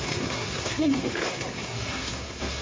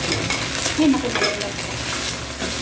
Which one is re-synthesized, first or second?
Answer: first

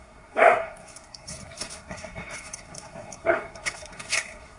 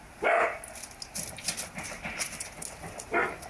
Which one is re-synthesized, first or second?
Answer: first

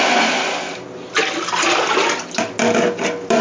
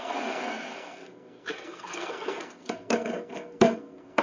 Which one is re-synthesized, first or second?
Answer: second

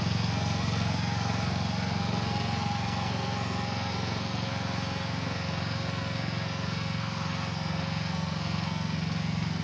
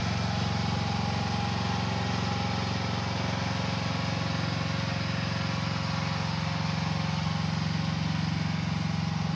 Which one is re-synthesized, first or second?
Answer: first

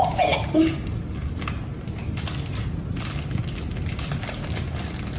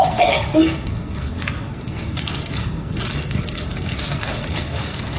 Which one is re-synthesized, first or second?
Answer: second